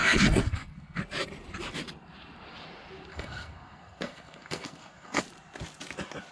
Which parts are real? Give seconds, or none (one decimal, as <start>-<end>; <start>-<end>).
1.0-3.1; 5.2-6.3